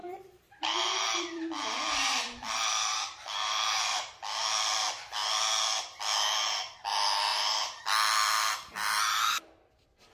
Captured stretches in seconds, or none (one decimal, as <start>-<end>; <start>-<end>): 4.5-7.3; 7.8-10.1